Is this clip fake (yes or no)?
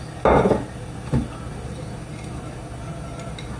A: no